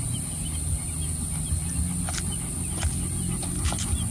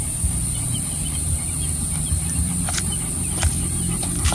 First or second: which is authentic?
first